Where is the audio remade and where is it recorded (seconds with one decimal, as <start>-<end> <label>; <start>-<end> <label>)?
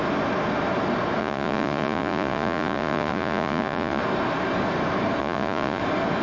0.0-1.2 recorded; 1.2-4.0 remade; 4.0-5.2 recorded; 5.2-5.8 remade; 5.8-6.2 recorded